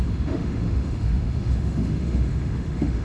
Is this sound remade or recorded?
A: remade